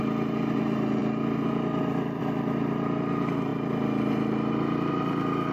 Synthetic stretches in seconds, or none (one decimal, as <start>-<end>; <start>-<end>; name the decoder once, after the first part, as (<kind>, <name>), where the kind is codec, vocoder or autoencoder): none